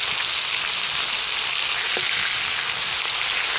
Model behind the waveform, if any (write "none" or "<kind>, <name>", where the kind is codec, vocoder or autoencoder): none